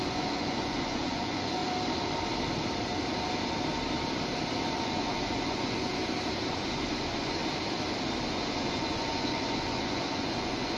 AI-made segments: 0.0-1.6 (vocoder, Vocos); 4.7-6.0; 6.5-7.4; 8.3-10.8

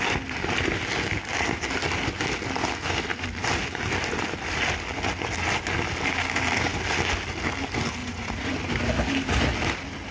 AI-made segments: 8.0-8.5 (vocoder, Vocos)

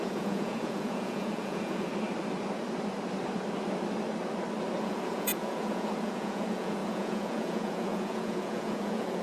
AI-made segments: 0.0-1.9 (vocoder, Vocos); 4.8-9.2

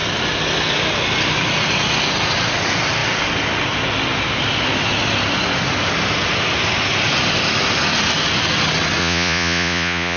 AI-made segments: 9.0-10.2 (vocoder, Vocos)

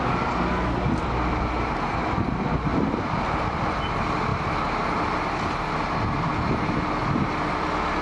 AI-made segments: none

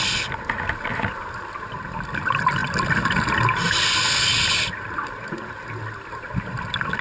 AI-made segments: none

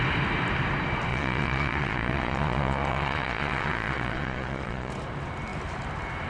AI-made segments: 1.1-4.9 (vocoder, Vocos)

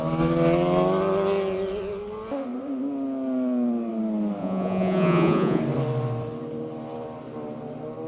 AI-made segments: 4.4-5.6 (vocoder, Vocos)